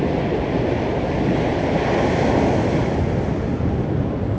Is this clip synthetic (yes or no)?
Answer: no